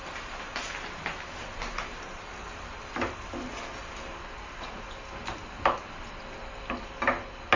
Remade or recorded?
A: recorded